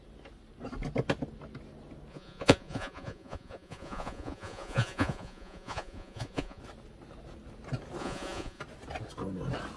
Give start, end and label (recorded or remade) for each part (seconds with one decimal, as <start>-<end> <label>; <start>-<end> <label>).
0.0-2.1 recorded; 2.1-6.6 remade; 6.6-8.0 recorded; 8.0-8.6 remade; 8.6-9.8 recorded

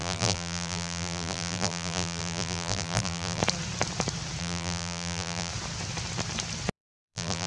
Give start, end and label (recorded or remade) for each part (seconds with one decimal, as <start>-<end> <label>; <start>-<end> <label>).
0.0-3.4 remade; 3.4-4.4 recorded; 4.4-5.5 remade; 5.5-6.7 recorded; 6.7-7.5 remade

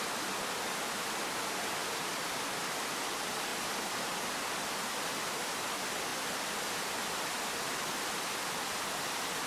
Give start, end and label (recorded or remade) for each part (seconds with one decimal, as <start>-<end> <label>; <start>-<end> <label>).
0.0-9.5 recorded

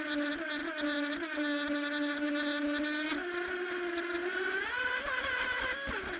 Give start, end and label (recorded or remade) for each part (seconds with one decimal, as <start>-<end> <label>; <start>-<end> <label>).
0.0-6.2 recorded

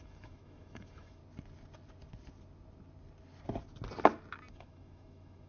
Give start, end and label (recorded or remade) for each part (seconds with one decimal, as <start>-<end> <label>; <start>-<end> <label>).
0.0-1.2 remade; 1.2-4.5 recorded; 4.5-5.5 remade